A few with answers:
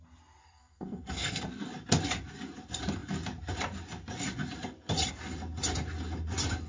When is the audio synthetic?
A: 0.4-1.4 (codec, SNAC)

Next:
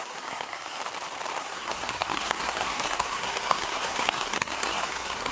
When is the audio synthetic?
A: 0.0-0.8 (codec, SNAC); 1.4-5.3

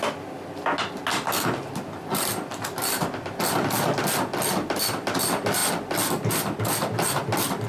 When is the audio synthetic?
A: none

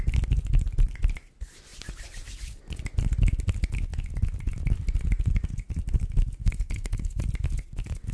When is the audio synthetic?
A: 6.4-7.2 (codec, SNAC)

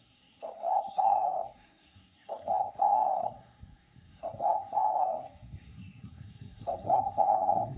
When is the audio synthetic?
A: 0.0-7.8 (codec, SNAC)